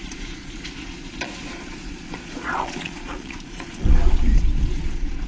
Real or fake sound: fake